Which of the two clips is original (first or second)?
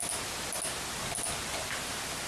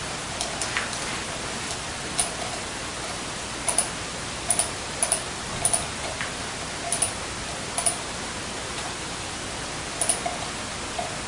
first